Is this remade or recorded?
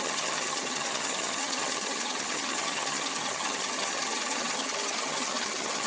remade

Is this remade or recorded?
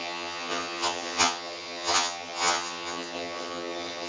remade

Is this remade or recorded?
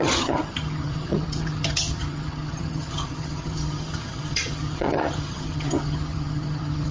remade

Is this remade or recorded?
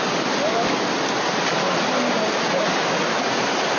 recorded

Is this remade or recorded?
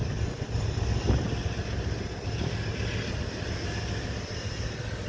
recorded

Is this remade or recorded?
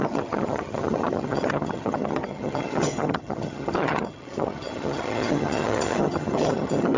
remade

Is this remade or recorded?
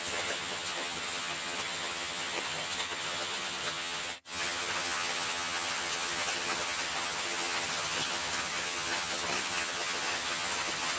remade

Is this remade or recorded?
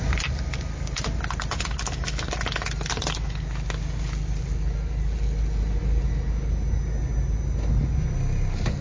recorded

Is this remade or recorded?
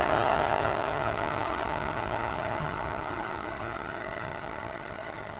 remade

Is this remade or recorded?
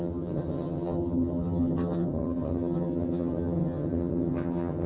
remade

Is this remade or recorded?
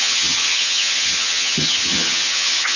remade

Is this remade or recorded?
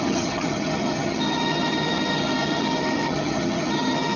remade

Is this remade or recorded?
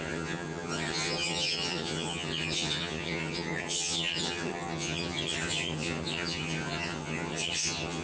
remade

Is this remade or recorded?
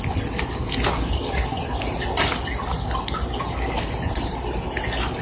recorded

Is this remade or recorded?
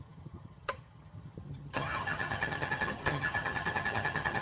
remade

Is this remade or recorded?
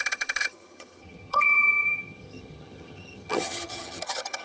remade